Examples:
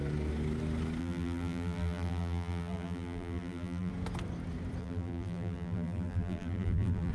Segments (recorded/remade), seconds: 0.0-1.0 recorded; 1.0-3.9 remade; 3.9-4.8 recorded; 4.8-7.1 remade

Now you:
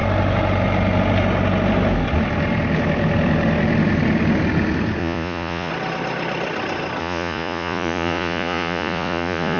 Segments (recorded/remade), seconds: 0.0-5.0 recorded; 5.0-5.7 remade; 5.7-7.0 recorded; 7.0-9.6 remade

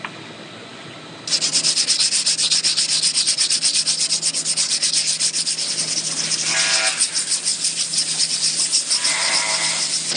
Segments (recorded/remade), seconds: 0.0-10.2 recorded

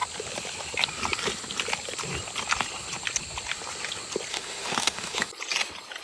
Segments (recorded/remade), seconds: 0.0-4.3 recorded; 4.3-5.3 remade; 5.3-6.0 recorded

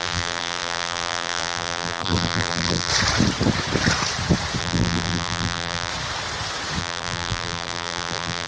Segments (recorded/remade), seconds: 0.0-2.9 remade; 2.9-4.6 recorded; 4.6-5.9 remade; 5.9-6.8 recorded; 6.8-8.5 remade